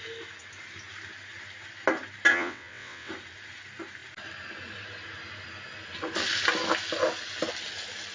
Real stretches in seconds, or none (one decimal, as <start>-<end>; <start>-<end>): 0.0-2.3; 3.1-8.1